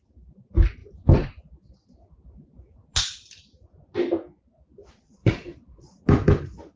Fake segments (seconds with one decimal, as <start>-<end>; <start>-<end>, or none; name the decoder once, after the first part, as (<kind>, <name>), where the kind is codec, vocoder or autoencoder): 5.2-6.0 (vocoder, Vocos)